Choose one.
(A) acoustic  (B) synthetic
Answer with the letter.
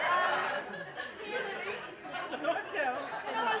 A